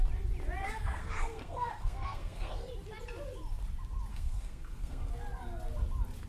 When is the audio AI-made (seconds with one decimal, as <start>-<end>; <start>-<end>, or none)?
0.6-2.7; 4.1-5.1